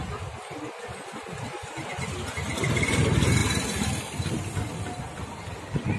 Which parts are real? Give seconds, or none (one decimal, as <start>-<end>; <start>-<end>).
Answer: 0.0-6.0